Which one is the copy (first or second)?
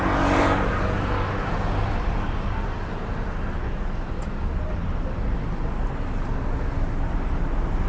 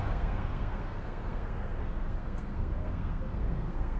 second